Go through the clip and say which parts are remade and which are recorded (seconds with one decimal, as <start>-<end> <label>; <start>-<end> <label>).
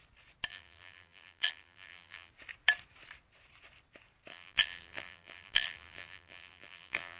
0.0-0.5 recorded; 0.5-2.3 remade; 2.3-4.3 recorded; 4.3-7.2 remade